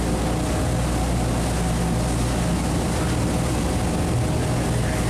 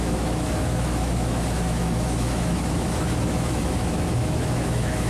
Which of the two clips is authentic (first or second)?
first